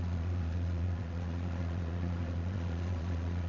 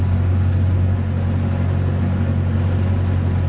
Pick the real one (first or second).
second